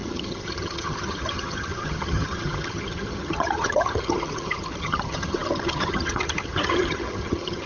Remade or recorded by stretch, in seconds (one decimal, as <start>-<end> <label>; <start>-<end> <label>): 0.0-7.7 remade